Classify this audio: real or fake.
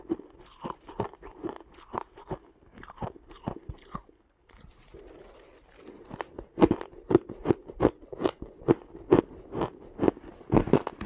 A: real